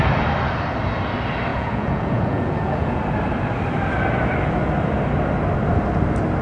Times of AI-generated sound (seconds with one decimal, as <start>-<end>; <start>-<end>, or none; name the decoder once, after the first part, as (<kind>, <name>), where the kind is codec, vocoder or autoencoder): 1.5-3.0 (vocoder, Vocos)